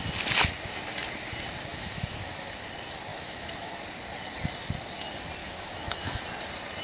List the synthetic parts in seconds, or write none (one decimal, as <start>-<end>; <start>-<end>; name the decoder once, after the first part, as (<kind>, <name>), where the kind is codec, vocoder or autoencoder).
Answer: 1.7-2.5 (autoencoder, DAC-VAE); 3.1-3.7; 5.4-6.2